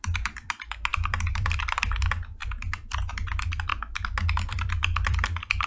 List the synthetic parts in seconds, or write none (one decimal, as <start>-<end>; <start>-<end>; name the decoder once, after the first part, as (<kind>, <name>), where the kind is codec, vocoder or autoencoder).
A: 0.0-3.7 (vocoder, BigVGAN v2); 4.5-5.7